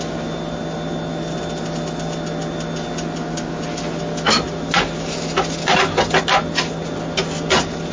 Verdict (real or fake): real